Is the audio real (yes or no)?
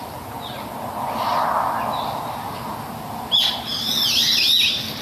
yes